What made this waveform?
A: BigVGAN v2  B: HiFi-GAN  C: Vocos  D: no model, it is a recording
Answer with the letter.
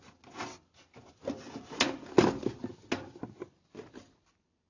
D